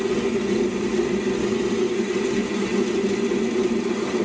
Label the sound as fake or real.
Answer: real